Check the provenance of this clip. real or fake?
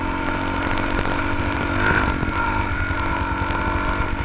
real